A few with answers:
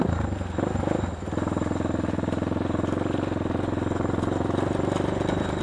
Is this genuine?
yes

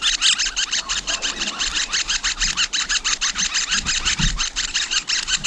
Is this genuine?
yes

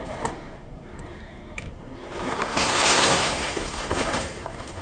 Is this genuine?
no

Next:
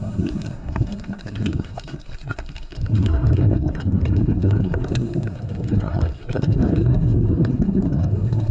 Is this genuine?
no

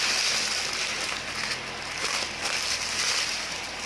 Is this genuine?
yes